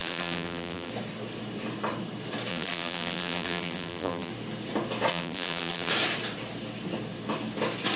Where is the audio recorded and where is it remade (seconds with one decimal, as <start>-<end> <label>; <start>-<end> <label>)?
0.0-0.9 remade; 0.9-2.5 recorded; 2.5-4.3 remade; 4.3-5.1 recorded; 5.1-5.9 remade; 5.9-8.0 recorded